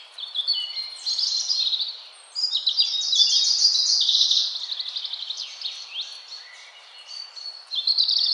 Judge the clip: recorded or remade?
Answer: recorded